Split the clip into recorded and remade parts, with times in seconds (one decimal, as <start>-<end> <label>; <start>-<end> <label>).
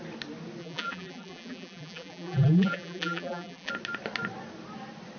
0.0-0.6 recorded; 0.6-3.7 remade; 3.7-5.2 recorded